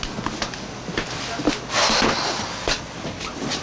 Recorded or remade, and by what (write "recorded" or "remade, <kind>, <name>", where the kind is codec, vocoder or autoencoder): recorded